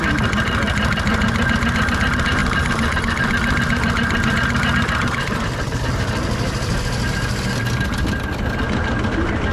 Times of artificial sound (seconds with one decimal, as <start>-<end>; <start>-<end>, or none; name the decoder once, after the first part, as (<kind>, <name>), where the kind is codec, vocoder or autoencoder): 2.4-3.0 (vocoder, BigVGAN v2)